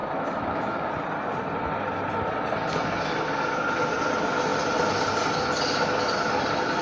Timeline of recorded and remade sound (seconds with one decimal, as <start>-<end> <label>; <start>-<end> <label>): 0.0-0.9 remade; 0.9-6.8 recorded

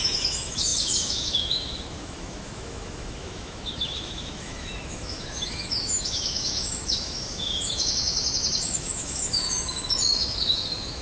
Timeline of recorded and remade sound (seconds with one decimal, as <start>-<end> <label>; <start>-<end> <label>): 0.0-11.0 remade

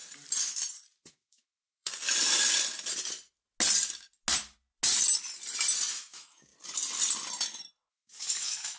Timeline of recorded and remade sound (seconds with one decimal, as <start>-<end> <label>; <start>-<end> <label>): 0.0-1.1 recorded; 1.1-1.9 remade; 1.9-5.9 recorded; 5.9-6.5 remade; 6.5-7.9 recorded; 7.9-8.8 remade

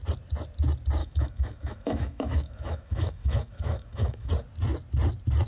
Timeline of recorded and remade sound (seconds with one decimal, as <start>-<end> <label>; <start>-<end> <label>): 0.0-1.0 recorded; 1.0-4.3 remade; 4.3-5.5 recorded